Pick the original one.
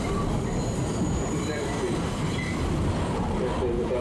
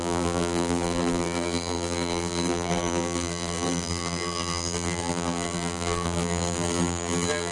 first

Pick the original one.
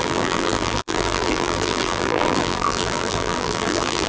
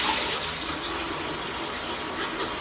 second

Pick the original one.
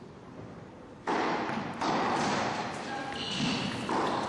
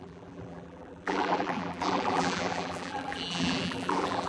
first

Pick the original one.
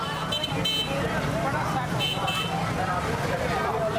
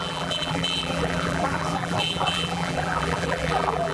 first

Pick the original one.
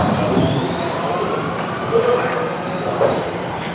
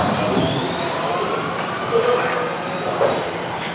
second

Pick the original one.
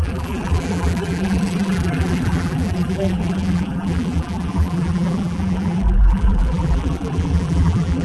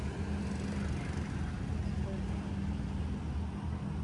second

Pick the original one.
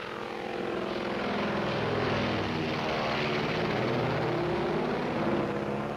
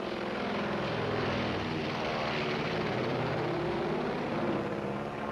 first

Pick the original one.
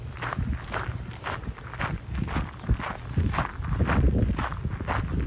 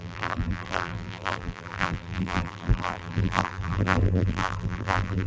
first